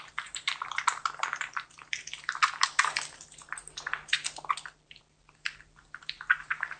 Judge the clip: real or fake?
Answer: real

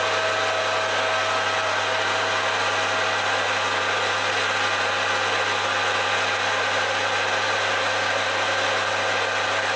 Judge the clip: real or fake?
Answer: real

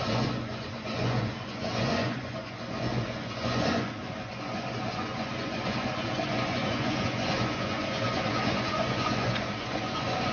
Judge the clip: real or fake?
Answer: fake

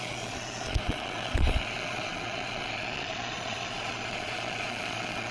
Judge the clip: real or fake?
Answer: fake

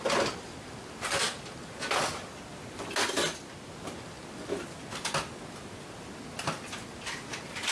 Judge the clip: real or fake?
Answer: real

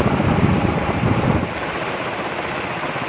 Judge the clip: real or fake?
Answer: real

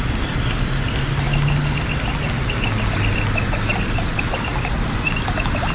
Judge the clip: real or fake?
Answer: real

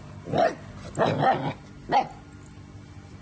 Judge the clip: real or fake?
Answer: real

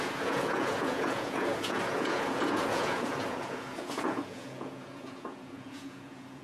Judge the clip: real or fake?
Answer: fake